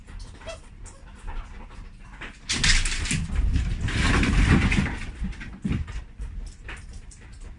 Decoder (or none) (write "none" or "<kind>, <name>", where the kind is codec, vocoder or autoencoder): none